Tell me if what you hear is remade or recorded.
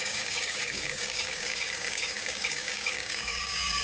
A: remade